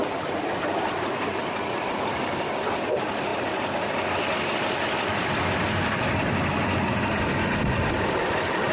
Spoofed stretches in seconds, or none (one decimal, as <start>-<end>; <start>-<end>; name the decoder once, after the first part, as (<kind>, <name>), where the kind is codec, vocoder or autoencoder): none